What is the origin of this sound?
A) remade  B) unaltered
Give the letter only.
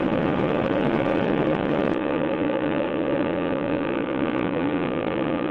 A